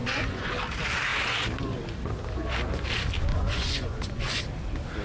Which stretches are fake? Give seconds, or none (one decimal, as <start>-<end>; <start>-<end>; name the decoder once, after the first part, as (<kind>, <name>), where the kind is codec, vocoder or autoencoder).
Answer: 0.0-0.5 (vocoder, Vocos); 3.3-4.4